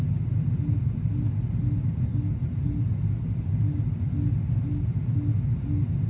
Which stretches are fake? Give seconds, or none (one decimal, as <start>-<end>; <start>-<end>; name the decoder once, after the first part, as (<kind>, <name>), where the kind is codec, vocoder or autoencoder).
none

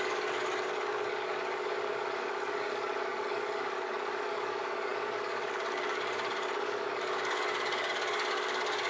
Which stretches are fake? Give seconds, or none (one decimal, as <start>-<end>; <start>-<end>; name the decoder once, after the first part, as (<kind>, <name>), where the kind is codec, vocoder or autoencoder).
0.0-8.9 (codec, DAC)

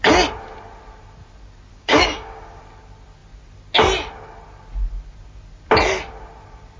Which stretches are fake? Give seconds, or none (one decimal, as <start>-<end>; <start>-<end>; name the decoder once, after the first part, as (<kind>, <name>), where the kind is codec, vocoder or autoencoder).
1.7-2.6 (codec, DAC)